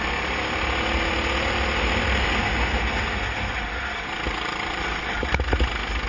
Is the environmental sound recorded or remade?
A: recorded